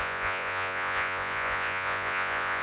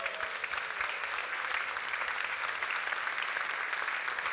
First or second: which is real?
second